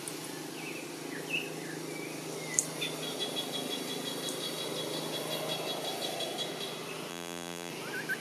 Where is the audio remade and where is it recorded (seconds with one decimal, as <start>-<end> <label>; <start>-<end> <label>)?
0.0-7.1 recorded; 7.1-7.7 remade; 7.7-8.2 recorded